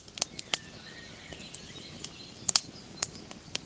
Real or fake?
real